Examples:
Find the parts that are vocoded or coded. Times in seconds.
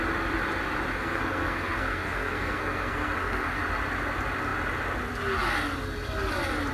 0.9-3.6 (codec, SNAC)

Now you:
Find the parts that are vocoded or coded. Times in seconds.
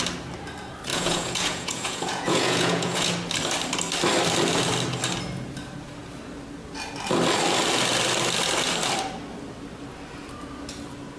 0.9-3.1 (vocoder, Vocos)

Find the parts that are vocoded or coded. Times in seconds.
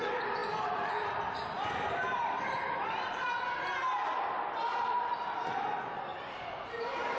0.0-3.3 (vocoder, BigVGAN v2); 4.7-7.2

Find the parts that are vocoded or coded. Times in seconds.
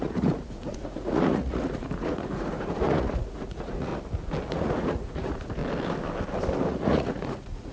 0.0-3.9 (vocoder, Vocos); 4.5-5.6; 6.7-7.7